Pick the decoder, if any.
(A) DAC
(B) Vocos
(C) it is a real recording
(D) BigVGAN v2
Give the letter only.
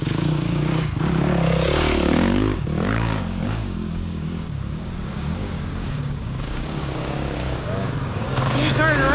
A